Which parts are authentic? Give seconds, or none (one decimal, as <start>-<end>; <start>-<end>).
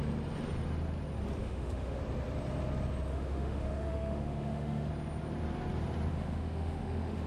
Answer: 0.0-1.4; 2.0-3.1; 4.9-6.1